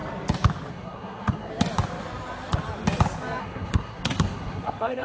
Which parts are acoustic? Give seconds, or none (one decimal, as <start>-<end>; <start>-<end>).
0.0-0.7; 1.5-3.4